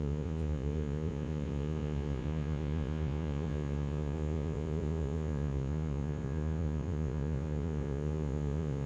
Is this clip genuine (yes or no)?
no